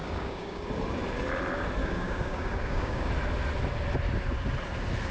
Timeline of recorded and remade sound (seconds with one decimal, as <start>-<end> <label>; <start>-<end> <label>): 0.0-0.7 remade; 0.7-1.8 recorded; 1.8-3.1 remade; 3.1-5.1 recorded